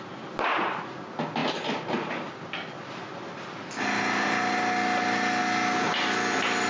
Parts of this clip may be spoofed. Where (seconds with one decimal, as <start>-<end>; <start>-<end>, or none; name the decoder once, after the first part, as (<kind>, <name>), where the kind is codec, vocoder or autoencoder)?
none